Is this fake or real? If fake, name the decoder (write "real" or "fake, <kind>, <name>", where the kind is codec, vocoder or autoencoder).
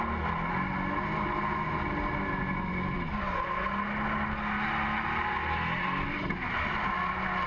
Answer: real